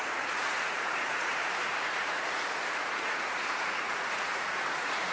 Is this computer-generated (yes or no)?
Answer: yes